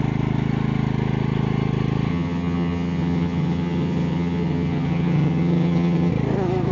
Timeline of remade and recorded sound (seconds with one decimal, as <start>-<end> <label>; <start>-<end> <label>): 0.0-2.1 recorded; 2.1-6.1 remade; 6.1-6.7 recorded